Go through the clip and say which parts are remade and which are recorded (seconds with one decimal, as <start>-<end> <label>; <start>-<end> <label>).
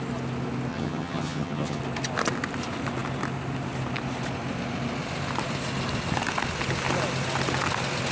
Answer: 0.0-0.7 recorded; 0.7-1.8 remade; 1.8-8.1 recorded